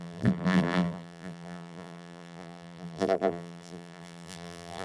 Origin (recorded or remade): remade